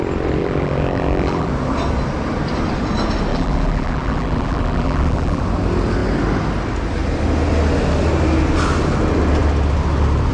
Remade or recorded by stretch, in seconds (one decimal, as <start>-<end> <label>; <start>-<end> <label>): 0.0-0.4 recorded; 0.4-1.5 remade; 1.5-3.3 recorded; 3.3-5.4 remade; 5.4-10.3 recorded